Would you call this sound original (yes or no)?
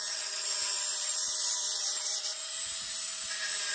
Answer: no